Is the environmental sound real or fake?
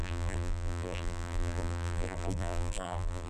fake